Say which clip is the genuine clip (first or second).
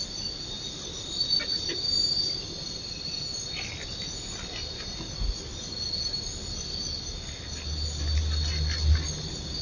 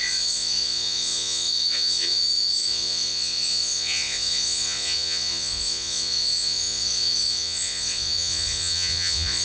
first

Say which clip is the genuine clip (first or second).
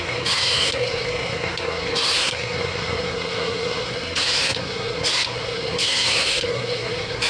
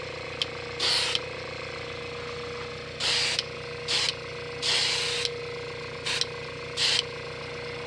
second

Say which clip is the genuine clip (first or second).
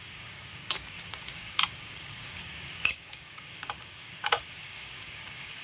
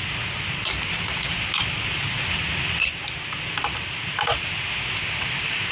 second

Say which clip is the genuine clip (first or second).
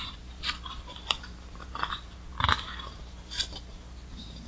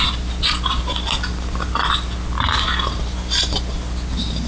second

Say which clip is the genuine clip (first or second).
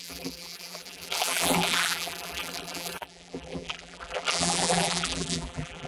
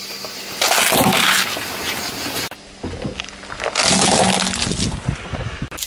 second